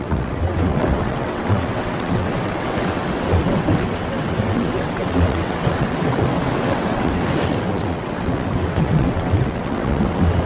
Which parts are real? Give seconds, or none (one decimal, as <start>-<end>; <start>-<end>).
none